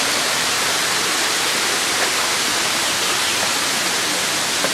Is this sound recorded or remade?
recorded